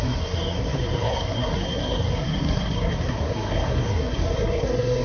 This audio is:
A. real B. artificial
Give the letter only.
B